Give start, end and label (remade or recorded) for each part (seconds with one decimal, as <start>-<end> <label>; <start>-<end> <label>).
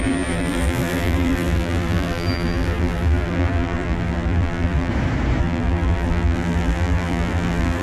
0.0-4.9 remade; 4.9-5.4 recorded; 5.4-7.8 remade